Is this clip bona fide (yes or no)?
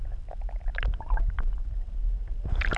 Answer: yes